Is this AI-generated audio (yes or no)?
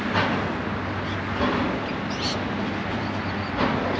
no